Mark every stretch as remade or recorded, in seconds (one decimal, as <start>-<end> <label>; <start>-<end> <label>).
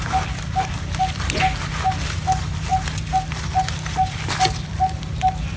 0.0-5.6 recorded